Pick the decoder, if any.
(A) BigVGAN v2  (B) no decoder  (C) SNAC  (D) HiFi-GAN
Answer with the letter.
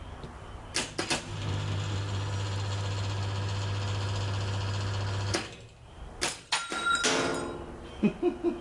B